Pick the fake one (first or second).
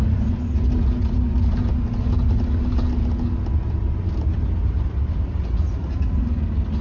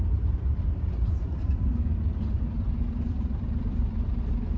second